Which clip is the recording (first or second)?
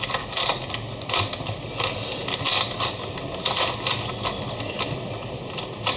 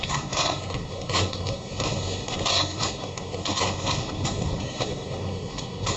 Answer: first